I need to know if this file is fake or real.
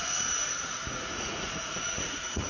fake